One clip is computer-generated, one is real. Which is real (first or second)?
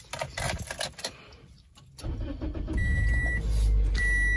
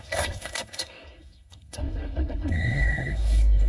first